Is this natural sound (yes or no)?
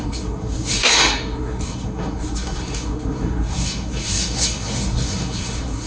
no